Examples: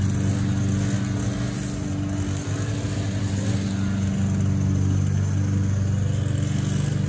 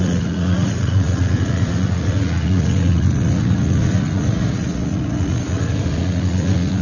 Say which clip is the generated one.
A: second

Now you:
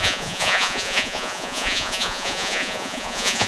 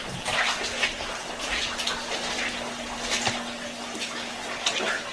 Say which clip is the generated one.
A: first